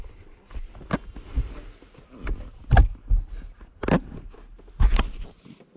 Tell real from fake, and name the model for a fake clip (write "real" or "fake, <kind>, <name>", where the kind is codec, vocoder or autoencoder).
real